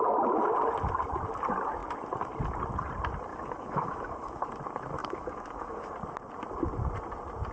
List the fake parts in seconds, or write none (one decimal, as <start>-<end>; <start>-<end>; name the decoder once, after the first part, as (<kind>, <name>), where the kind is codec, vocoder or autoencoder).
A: 3.3-4.5 (autoencoder, DAC-VAE); 5.0-5.9

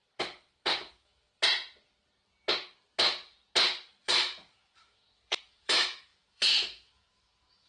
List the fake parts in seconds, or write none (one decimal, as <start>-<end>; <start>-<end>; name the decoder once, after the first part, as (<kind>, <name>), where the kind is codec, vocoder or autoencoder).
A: 0.9-1.3 (autoencoder, DAC-VAE); 4.0-7.7

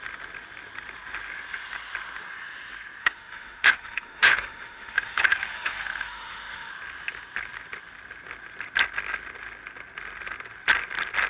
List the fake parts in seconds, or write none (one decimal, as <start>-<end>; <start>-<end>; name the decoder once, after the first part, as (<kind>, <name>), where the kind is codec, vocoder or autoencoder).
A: 3.0-6.7 (autoencoder, DAC-VAE)